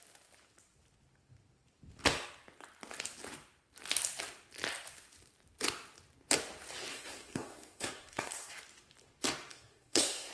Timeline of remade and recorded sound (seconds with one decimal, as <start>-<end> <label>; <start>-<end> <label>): 0.0-6.9 recorded; 6.9-8.5 remade; 8.5-9.5 recorded; 9.5-10.3 remade